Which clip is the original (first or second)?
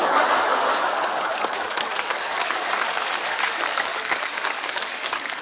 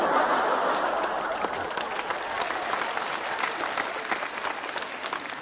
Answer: second